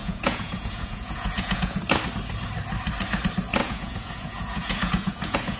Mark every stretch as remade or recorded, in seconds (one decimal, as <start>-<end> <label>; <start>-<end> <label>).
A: 0.0-1.8 remade; 1.8-3.6 recorded; 3.6-5.6 remade